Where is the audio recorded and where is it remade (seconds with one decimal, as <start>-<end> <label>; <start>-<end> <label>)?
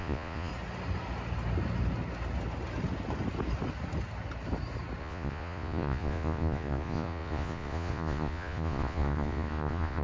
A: 0.0-0.5 remade; 0.5-5.0 recorded; 5.0-10.0 remade